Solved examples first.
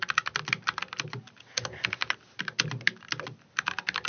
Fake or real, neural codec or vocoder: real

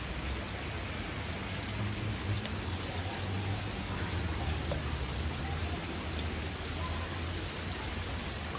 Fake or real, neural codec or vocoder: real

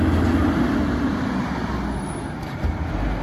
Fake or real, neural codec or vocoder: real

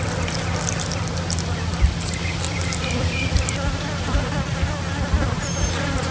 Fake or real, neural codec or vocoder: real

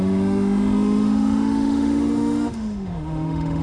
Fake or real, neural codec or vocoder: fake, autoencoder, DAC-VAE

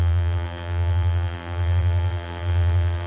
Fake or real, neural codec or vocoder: fake, vocoder, BigVGAN v2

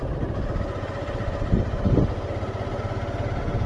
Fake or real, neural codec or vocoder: real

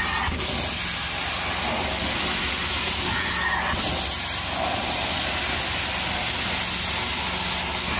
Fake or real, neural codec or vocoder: real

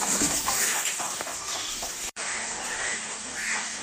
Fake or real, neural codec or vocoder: fake, codec, DAC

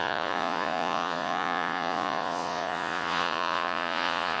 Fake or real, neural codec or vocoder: fake, vocoder, Vocos